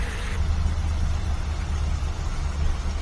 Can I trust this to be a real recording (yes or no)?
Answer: yes